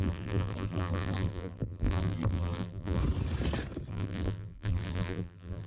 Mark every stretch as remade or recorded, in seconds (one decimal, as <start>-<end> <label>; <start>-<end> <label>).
0.0-3.0 remade; 3.0-3.9 recorded; 3.9-5.7 remade